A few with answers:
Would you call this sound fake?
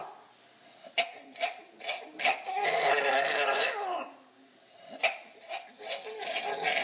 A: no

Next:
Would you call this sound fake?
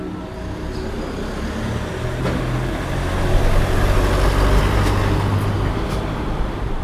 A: no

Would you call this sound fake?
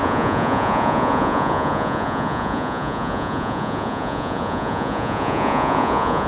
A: yes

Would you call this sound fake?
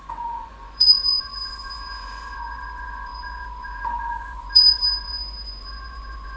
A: yes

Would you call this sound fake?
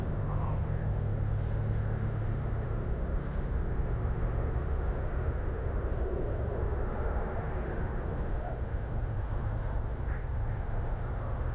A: yes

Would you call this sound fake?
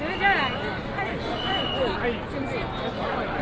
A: no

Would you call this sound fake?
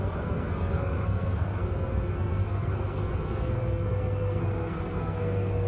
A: yes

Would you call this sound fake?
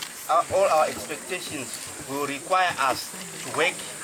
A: no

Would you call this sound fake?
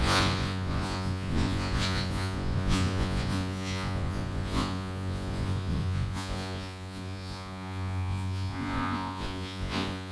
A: yes